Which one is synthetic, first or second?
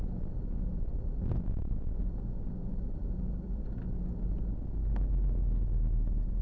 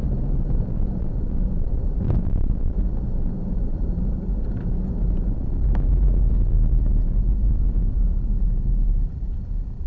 second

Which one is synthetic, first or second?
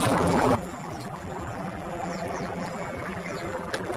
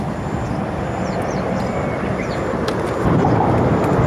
first